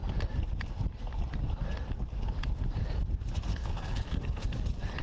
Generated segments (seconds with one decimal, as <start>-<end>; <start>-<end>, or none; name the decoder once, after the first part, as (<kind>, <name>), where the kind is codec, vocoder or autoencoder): 3.5-4.4 (codec, SNAC)